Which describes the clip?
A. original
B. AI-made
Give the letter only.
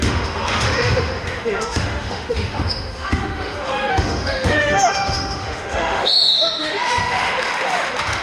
B